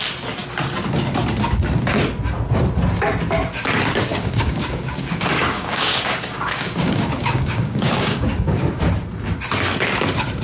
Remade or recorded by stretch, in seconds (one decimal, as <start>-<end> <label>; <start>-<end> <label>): 0.0-4.1 recorded; 4.1-8.8 remade; 8.8-10.4 recorded